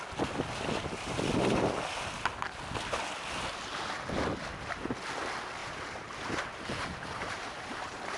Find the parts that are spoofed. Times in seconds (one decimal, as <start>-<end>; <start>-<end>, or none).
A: 5.6-8.2